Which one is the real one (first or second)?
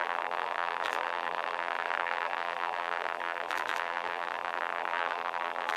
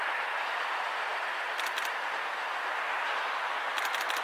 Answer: second